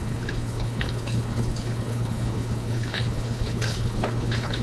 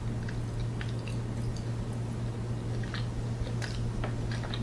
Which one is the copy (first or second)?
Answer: first